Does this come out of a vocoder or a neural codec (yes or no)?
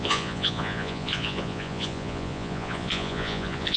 yes